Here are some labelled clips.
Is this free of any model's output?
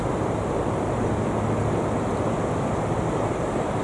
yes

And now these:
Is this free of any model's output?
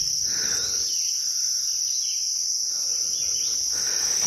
yes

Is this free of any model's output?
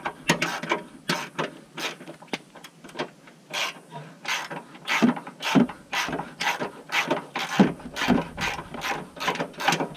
yes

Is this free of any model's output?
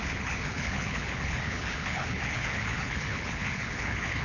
no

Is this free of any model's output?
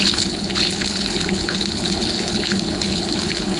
no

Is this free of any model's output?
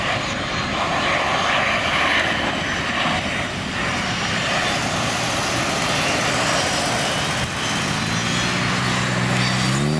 yes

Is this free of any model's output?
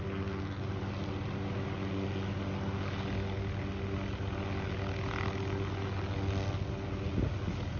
yes